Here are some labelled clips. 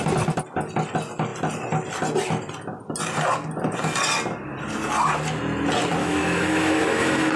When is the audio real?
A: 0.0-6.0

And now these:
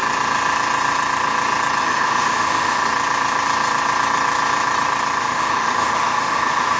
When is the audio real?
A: 0.0-1.8; 2.8-5.2

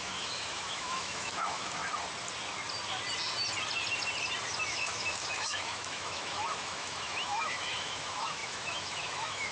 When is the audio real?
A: 1.8-4.7

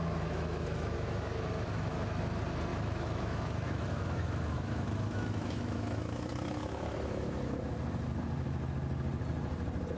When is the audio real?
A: 2.2-2.7; 7.5-10.0

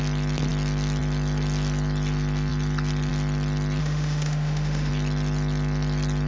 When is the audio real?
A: 0.0-3.8; 4.9-6.3